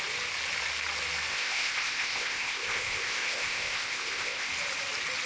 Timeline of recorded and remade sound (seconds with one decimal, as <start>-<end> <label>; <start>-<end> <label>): 0.0-1.3 recorded; 1.3-4.5 remade; 4.5-5.3 recorded